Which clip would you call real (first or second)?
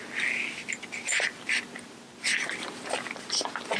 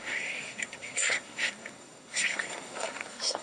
first